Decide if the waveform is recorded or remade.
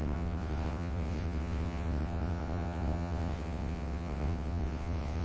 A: remade